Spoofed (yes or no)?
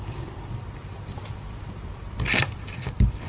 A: yes